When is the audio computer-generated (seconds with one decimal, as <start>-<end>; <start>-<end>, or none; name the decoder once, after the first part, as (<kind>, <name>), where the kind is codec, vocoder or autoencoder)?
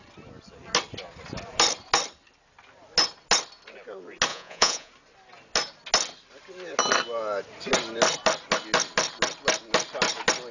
4.3-4.9 (vocoder, Vocos)